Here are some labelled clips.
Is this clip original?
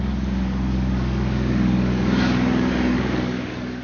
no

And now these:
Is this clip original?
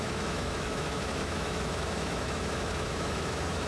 no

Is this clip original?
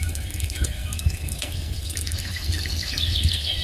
no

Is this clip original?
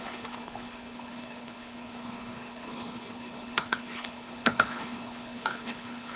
no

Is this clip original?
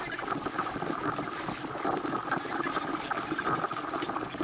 yes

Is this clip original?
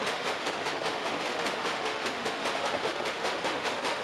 no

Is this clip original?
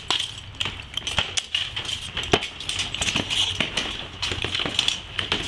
yes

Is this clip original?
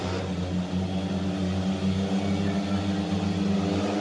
yes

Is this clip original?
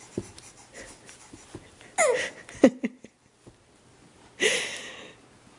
yes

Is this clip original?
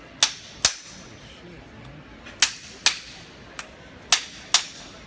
yes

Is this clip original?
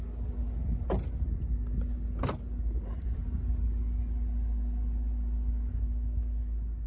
yes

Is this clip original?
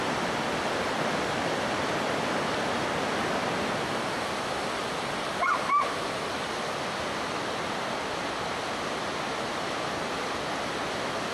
yes